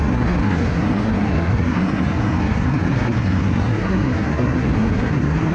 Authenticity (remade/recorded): remade